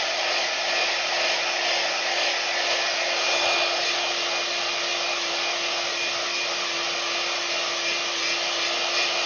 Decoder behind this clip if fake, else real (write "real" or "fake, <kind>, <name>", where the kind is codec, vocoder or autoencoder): real